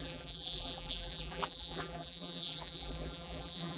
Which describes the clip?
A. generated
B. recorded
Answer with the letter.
A